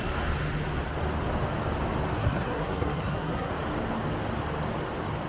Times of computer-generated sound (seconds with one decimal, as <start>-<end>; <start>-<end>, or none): 2.2-3.5